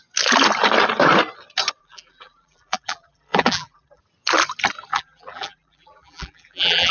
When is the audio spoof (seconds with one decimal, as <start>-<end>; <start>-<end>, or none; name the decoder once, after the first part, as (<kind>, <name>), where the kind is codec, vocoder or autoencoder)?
1.8-4.0 (vocoder, BigVGAN v2); 4.9-6.9